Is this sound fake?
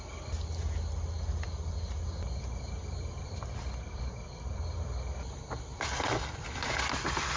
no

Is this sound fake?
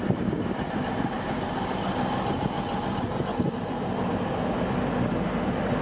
no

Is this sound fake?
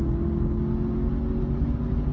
no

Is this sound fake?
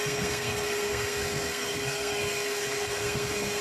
yes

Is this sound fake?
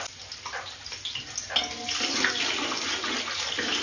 no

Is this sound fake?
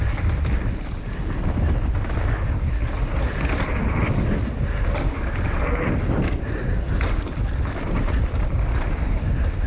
no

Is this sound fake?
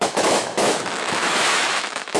yes